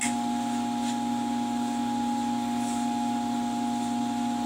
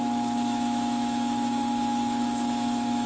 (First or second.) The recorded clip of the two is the first